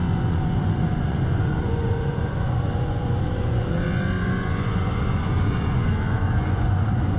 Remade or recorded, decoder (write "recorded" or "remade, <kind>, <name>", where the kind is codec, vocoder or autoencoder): remade, vocoder, Vocos